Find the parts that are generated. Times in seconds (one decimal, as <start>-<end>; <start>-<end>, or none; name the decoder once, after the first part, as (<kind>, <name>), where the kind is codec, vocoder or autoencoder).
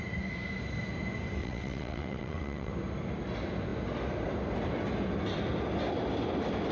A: 1.4-2.7 (vocoder, WaveNeXt)